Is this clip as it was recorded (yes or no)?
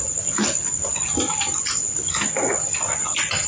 yes